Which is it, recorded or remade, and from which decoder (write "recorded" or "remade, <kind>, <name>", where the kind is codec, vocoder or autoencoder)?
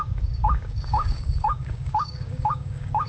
remade, codec, DAC